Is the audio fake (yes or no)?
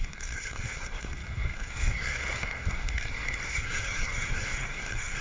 yes